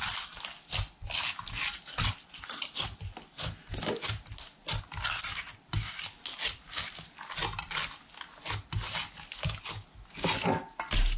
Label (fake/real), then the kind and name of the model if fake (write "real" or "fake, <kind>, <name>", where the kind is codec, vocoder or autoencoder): real